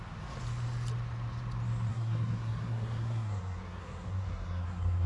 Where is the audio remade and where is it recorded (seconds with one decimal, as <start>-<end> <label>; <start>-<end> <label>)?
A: 0.0-1.9 recorded; 1.9-5.1 remade